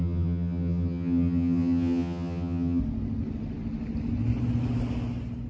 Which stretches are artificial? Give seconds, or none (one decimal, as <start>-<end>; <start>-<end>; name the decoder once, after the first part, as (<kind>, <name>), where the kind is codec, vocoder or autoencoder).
0.0-2.8 (vocoder, HiFi-GAN)